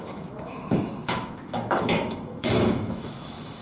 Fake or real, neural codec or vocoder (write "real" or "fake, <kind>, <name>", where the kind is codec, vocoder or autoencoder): fake, autoencoder, DAC-VAE